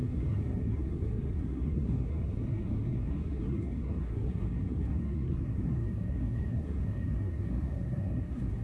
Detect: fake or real fake